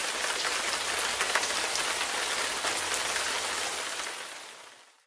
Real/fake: real